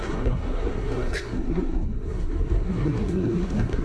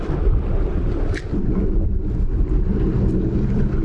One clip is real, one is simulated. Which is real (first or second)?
second